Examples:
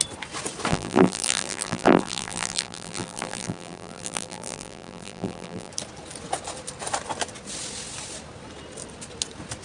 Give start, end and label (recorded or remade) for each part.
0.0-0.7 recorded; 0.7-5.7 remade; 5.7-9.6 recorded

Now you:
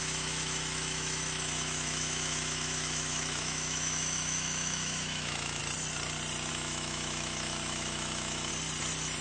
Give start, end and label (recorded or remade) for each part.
0.0-5.6 remade; 5.6-6.5 recorded; 6.5-8.5 remade; 8.5-9.2 recorded

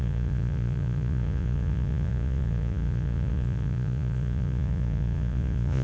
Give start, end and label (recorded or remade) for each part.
0.0-5.8 remade

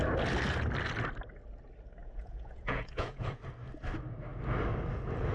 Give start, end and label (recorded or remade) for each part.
0.0-2.0 recorded; 2.0-3.4 remade; 3.4-5.3 recorded

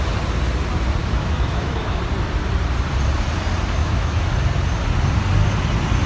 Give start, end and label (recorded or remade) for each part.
0.0-1.0 recorded; 1.0-2.0 remade; 2.0-3.8 recorded; 3.8-4.3 remade; 4.3-6.1 recorded

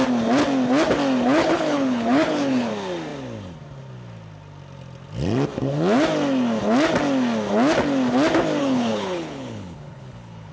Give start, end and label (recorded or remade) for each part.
0.0-1.4 recorded; 1.4-2.7 remade; 2.7-8.6 recorded; 8.6-10.5 remade

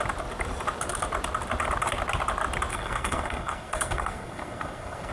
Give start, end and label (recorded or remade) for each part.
0.0-2.7 recorded; 2.7-5.1 remade

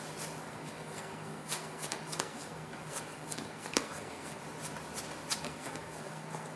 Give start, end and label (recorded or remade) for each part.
0.0-0.4 recorded; 0.4-4.4 remade; 4.4-5.4 recorded; 5.4-6.6 remade